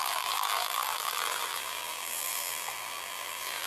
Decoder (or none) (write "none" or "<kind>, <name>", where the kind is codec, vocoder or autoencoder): vocoder, BigVGAN v2